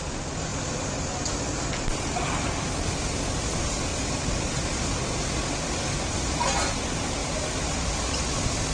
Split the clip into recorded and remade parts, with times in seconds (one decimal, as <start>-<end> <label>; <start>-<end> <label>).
0.0-0.5 recorded; 0.5-1.8 remade; 1.8-7.2 recorded; 7.2-8.2 remade; 8.2-8.7 recorded